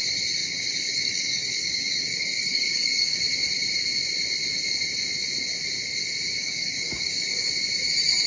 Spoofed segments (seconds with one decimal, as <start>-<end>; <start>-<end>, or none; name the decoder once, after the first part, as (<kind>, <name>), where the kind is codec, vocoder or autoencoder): 0.4-3.2 (codec, DAC); 6.4-7.5